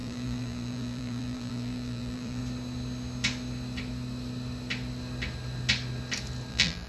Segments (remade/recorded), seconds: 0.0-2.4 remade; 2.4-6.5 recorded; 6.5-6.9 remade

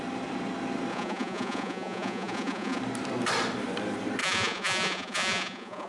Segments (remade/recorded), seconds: 0.0-0.9 recorded; 0.9-2.8 remade; 2.8-4.2 recorded; 4.2-5.9 remade

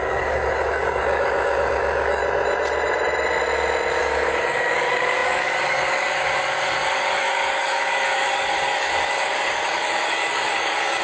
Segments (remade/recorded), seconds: 0.0-2.2 remade; 2.2-4.0 recorded; 4.0-11.0 remade

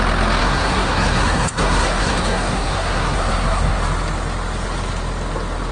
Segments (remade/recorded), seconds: 0.0-0.4 recorded; 0.4-3.8 remade; 3.8-5.7 recorded

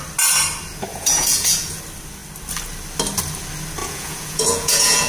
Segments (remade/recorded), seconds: 0.0-0.9 recorded; 0.9-1.8 remade; 1.8-3.8 recorded; 3.8-5.1 remade

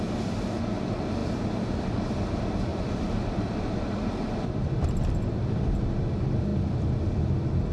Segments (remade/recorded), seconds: 0.0-1.2 recorded; 1.2-2.0 remade; 2.0-2.7 recorded; 2.7-5.8 remade; 5.8-7.7 recorded